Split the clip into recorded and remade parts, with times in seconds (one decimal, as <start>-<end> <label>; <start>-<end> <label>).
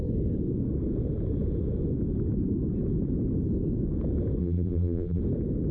0.0-4.4 recorded; 4.4-5.2 remade; 5.2-5.7 recorded